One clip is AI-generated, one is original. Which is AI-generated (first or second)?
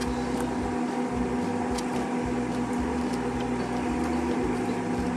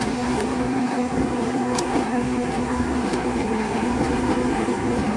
second